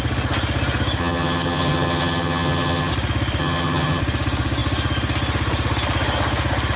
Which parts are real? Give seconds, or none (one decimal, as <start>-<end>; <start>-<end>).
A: 0.0-1.0; 2.9-3.4; 4.0-6.8